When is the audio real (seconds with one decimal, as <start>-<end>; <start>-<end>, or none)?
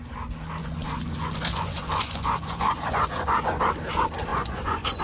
0.0-0.6; 3.6-4.3